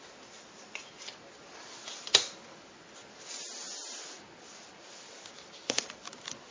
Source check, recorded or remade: recorded